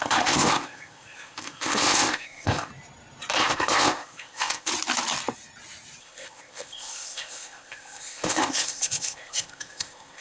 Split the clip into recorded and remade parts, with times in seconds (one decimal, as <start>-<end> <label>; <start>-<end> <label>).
0.0-2.7 remade; 2.7-3.3 recorded; 3.3-4.7 remade; 4.7-6.0 recorded; 6.0-10.2 remade